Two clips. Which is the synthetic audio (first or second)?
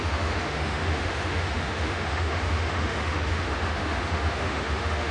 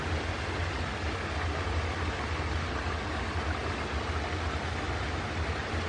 first